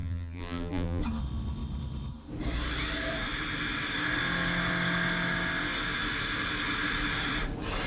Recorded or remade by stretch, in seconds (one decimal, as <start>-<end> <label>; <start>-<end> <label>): 0.0-1.0 remade; 1.0-7.9 recorded